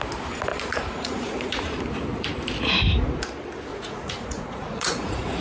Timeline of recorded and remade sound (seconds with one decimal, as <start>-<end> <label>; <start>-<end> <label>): 0.0-0.5 recorded; 0.5-1.8 remade; 1.8-3.7 recorded; 3.7-5.4 remade